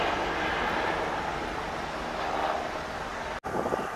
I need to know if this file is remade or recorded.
recorded